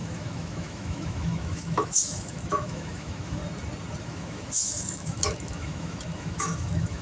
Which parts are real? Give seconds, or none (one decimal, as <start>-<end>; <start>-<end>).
3.4-4.0